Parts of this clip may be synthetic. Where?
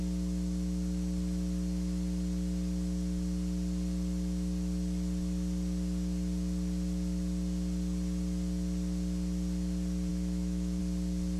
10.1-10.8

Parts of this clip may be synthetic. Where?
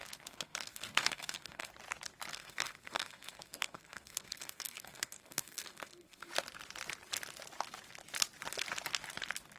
0.0-1.7; 2.3-6.3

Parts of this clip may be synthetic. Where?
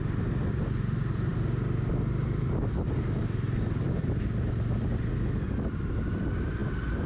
none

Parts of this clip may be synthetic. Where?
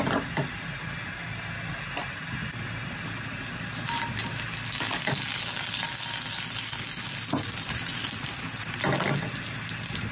none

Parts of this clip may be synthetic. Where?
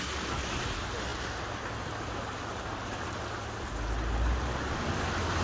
none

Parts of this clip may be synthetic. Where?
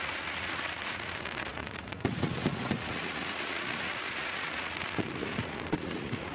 0.0-6.3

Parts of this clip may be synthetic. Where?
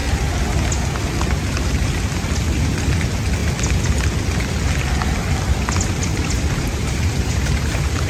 6.1-8.1